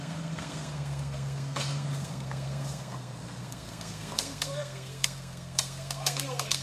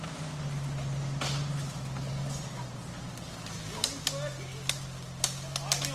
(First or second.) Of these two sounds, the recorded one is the second